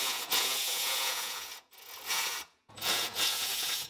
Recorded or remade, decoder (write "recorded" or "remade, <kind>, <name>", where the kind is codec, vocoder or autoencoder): remade, vocoder, Vocos